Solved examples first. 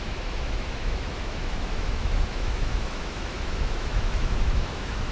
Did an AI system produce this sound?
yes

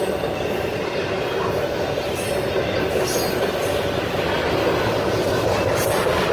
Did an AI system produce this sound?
no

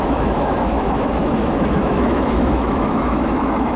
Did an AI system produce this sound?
yes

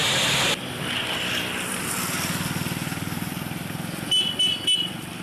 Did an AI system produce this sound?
no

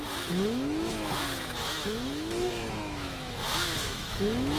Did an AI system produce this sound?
yes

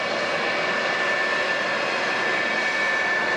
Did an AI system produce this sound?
no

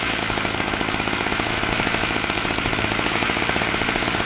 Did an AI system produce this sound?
yes